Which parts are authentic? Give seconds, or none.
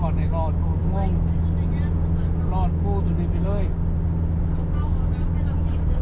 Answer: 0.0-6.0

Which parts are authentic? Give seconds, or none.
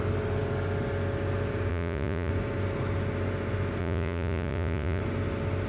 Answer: 0.0-1.7; 2.3-3.8; 5.0-5.7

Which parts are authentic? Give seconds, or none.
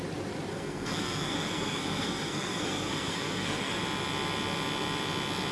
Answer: 0.0-0.5; 3.8-5.5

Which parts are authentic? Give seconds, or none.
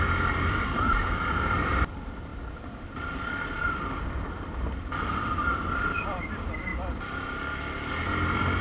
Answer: 6.7-7.5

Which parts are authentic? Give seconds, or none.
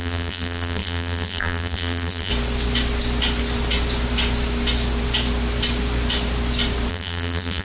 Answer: 2.3-6.9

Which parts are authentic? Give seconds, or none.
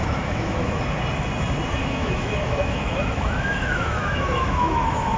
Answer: 0.8-1.8